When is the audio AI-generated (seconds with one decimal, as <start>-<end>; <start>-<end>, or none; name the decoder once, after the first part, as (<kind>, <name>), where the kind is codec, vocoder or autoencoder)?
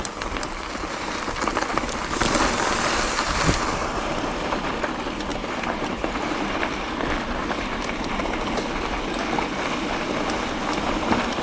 3.8-4.8 (vocoder, BigVGAN v2); 5.3-6.6; 7.4-8.2